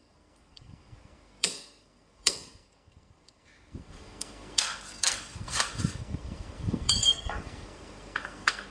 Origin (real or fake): fake